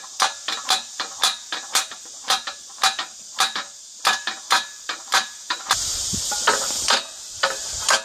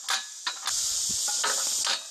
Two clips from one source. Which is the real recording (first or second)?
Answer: second